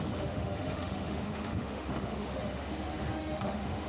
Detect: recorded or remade remade